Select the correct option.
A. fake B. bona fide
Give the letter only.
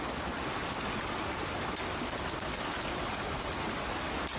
B